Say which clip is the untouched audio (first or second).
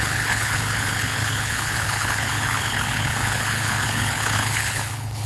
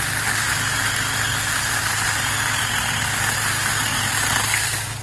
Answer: second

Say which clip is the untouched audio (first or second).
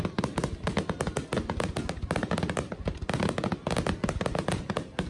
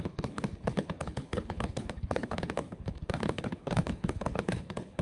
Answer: first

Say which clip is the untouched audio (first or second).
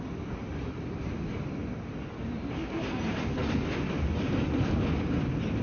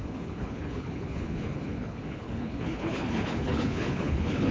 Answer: first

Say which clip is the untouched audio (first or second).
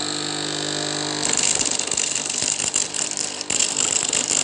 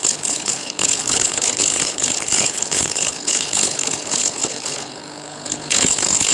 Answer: first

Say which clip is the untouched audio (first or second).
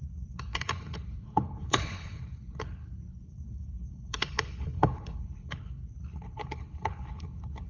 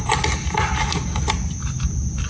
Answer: second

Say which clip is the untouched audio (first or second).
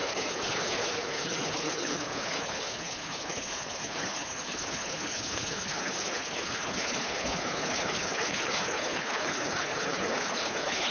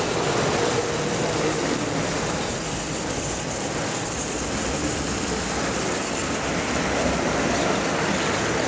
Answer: second